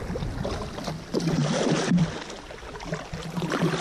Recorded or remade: recorded